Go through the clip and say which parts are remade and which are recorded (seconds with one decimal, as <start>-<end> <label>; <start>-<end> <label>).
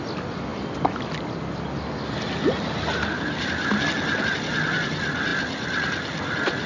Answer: 0.0-6.7 recorded